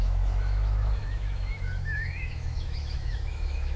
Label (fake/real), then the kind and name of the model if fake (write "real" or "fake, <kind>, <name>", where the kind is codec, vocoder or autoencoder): fake, autoencoder, DAC-VAE